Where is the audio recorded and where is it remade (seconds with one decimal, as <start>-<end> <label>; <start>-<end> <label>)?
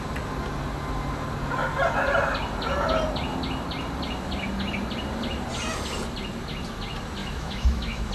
0.0-7.2 recorded; 7.2-8.1 remade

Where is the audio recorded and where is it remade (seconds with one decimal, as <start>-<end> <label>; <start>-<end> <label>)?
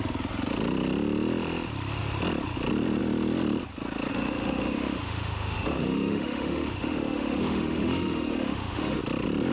0.0-4.1 recorded; 4.1-9.0 remade; 9.0-9.5 recorded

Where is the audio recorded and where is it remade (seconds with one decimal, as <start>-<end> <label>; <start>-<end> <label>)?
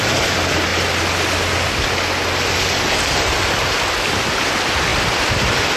0.0-5.8 recorded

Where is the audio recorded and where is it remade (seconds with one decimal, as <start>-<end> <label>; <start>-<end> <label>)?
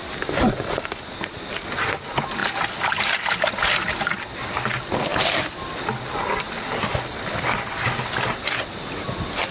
0.0-9.5 recorded